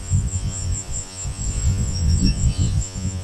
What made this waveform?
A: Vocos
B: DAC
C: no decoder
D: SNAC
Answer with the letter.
A